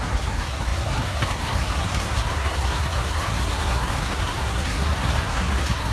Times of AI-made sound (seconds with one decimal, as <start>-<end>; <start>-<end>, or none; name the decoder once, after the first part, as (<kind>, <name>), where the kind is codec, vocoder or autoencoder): 0.0-5.9 (codec, SNAC)